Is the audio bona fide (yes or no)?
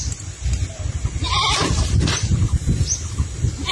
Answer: yes